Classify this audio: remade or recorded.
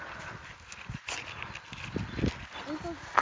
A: recorded